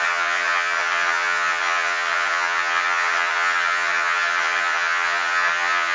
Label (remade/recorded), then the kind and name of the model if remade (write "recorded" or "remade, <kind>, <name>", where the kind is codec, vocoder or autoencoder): remade, vocoder, HiFi-GAN